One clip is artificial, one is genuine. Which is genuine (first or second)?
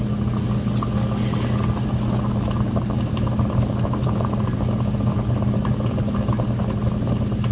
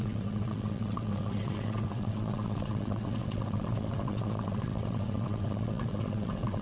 first